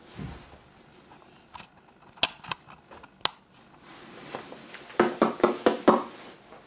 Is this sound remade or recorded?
recorded